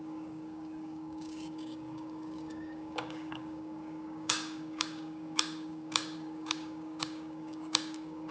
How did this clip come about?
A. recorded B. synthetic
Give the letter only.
B